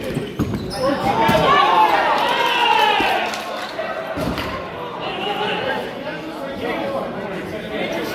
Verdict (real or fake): real